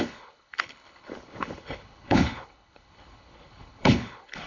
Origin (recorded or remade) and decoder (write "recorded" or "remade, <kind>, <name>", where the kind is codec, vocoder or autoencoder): remade, codec, HILCodec